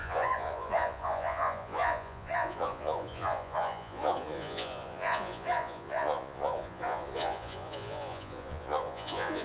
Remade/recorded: remade